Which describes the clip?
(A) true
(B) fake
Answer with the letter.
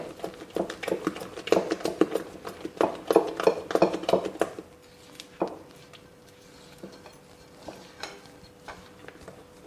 A